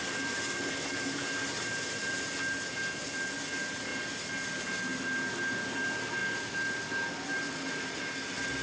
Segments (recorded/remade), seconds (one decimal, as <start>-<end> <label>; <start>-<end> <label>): 0.0-8.6 recorded